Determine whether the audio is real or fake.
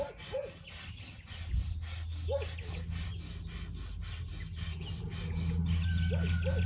real